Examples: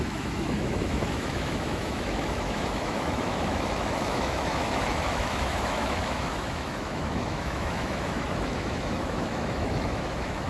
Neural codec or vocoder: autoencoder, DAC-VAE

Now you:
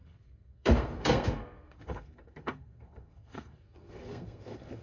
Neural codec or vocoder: codec, SNAC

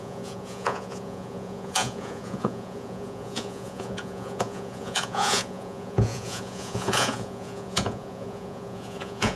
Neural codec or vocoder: vocoder, Vocos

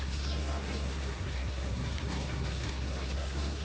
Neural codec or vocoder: codec, SNAC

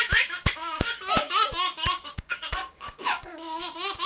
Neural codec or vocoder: codec, DAC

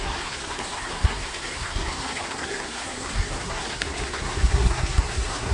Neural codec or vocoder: codec, SNAC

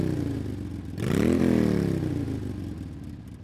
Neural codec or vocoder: none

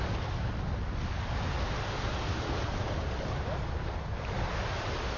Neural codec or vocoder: none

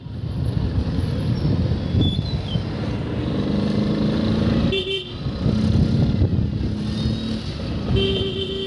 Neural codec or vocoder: none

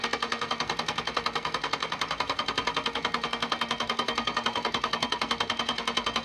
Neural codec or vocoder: codec, SNAC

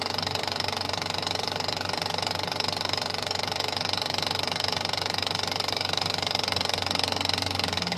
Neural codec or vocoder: codec, DAC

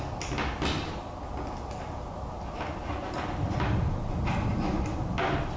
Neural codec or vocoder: none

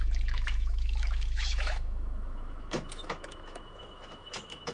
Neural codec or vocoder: autoencoder, DAC-VAE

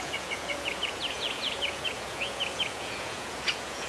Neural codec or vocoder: vocoder, Vocos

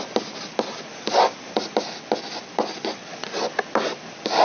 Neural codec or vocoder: none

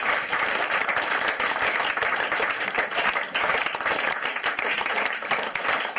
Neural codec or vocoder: vocoder, BigVGAN v2